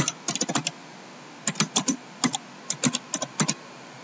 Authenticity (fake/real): real